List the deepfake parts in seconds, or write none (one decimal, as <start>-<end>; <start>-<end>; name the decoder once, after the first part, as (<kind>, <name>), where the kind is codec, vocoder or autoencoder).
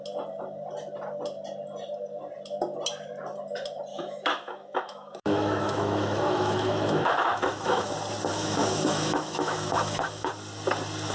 3.9-7.9 (autoencoder, DAC-VAE); 8.3-10.3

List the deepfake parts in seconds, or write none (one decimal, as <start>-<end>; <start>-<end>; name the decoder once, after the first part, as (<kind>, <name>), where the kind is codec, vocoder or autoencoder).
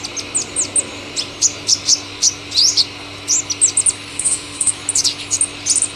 4.1-4.7 (autoencoder, DAC-VAE)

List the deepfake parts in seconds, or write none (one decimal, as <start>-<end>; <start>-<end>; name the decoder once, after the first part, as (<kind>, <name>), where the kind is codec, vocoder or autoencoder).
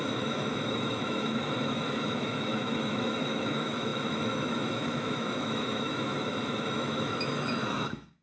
0.0-8.2 (autoencoder, DAC-VAE)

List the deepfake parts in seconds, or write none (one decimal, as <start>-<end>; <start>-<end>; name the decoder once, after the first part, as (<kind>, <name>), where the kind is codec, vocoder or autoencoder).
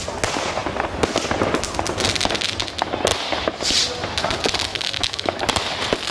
4.7-5.3 (autoencoder, DAC-VAE)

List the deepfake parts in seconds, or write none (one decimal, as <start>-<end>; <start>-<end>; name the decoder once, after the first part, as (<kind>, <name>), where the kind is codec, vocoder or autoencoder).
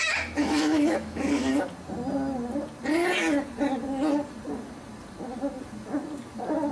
0.4-1.5 (autoencoder, DAC-VAE)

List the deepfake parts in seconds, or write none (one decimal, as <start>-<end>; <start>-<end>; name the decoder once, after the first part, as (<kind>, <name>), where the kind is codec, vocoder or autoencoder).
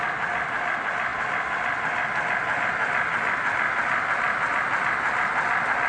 none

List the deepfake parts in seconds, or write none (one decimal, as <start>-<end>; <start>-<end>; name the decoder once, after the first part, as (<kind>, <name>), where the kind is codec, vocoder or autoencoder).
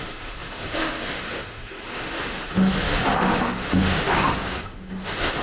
0.0-5.4 (autoencoder, DAC-VAE)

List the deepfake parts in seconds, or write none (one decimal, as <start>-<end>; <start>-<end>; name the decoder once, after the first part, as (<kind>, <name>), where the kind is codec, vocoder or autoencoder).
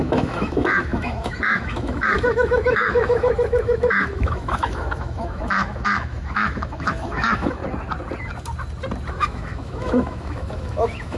0.0-7.6 (autoencoder, DAC-VAE); 9.1-11.2